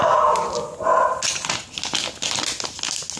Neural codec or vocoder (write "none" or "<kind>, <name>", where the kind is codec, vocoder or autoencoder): none